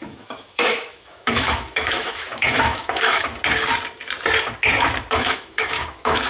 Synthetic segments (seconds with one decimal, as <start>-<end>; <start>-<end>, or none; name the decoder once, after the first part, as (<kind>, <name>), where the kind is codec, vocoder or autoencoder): 0.0-3.3 (autoencoder, DAC-VAE); 5.1-6.3